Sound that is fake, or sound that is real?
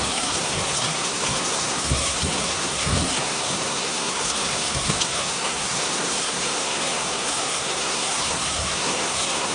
fake